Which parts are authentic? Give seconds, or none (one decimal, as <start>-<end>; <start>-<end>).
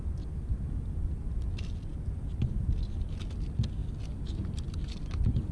0.0-5.5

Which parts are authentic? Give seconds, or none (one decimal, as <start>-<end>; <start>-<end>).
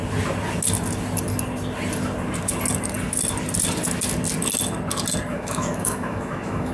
0.0-5.3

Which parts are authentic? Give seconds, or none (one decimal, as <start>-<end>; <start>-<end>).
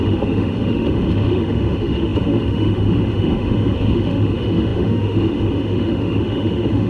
none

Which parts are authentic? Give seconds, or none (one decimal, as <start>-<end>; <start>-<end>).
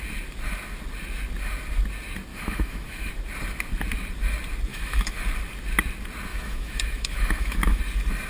0.0-2.3; 3.1-4.7; 5.2-6.3; 7.8-8.3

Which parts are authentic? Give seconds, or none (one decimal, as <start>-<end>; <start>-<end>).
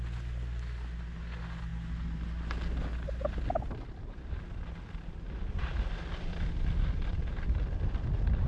0.0-8.5